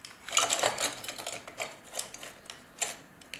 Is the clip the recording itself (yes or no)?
yes